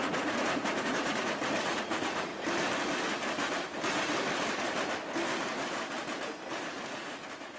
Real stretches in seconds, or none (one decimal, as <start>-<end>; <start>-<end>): 2.3-6.9